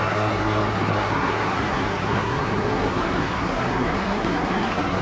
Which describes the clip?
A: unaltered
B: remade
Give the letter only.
B